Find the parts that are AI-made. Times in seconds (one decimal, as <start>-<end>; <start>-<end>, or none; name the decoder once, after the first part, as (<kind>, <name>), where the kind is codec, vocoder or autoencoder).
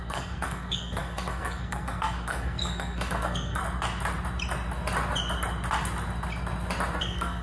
0.0-3.6 (codec, SNAC); 7.0-7.4